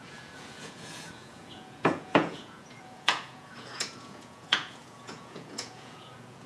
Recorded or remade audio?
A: remade